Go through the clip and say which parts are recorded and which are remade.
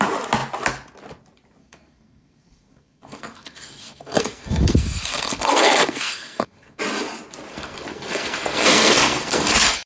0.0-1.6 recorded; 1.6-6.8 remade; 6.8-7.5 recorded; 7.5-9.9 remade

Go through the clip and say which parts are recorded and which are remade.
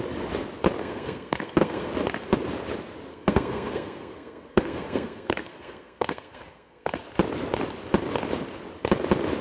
0.0-0.8 recorded; 0.8-1.9 remade; 1.9-3.1 recorded; 3.1-7.0 remade; 7.0-9.4 recorded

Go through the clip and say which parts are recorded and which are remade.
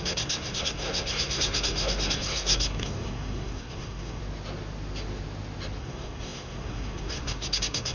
0.0-4.2 remade; 4.2-5.8 recorded; 5.8-7.9 remade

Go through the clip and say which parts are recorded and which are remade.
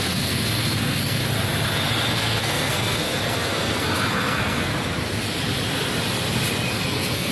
0.0-1.2 remade; 1.2-2.1 recorded; 2.1-4.7 remade; 4.7-6.7 recorded; 6.7-7.3 remade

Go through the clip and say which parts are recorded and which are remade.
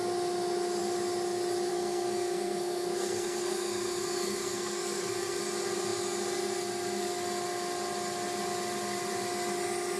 0.0-1.7 recorded; 1.7-5.4 remade; 5.4-10.0 recorded